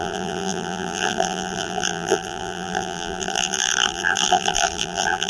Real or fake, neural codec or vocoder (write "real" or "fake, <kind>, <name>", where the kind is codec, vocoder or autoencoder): fake, vocoder, BigVGAN v2